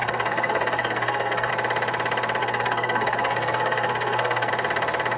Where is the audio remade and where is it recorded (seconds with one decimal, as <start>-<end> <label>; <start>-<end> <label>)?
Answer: 0.0-1.5 remade; 1.5-2.4 recorded; 2.4-4.5 remade; 4.5-5.2 recorded